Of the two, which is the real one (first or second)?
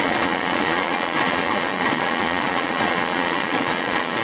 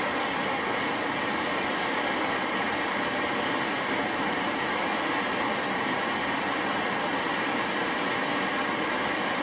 second